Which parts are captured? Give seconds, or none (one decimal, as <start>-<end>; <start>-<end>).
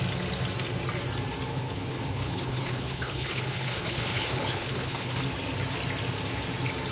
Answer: 0.0-1.5; 5.2-6.9